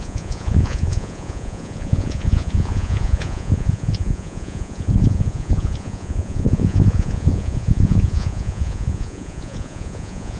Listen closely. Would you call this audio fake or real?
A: fake